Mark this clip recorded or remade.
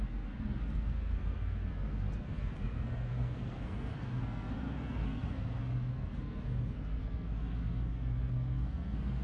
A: remade